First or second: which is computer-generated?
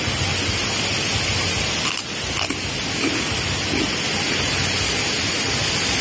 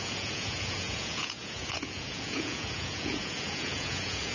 second